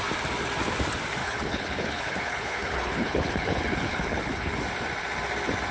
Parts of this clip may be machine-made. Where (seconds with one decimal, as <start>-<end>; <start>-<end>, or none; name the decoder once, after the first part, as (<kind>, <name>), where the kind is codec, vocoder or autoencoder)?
1.2-4.6 (codec, HILCodec)